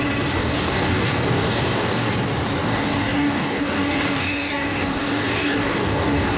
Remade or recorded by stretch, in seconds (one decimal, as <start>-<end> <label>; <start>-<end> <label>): 0.0-0.4 recorded; 0.4-2.1 remade; 2.1-2.6 recorded; 2.6-6.4 remade